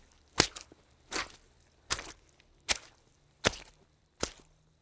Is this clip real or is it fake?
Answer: real